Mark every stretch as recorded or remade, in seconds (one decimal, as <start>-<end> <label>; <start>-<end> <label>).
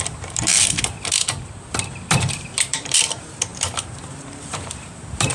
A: 0.0-0.5 remade; 0.5-2.1 recorded; 2.1-5.3 remade